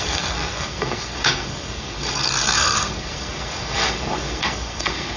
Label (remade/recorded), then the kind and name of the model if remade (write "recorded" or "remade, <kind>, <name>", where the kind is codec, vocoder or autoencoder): remade, codec, SNAC